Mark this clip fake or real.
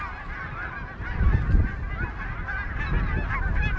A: real